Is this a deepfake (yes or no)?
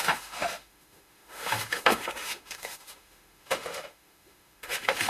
yes